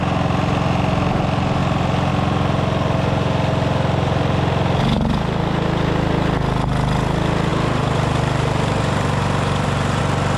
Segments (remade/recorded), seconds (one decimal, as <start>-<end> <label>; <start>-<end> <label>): 0.0-7.5 recorded; 7.5-10.0 remade; 10.0-10.4 recorded